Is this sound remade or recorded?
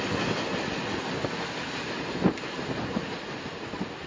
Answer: recorded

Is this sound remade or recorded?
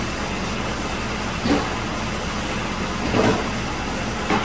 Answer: recorded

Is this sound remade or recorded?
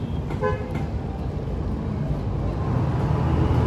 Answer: recorded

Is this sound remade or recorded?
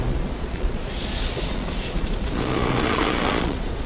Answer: remade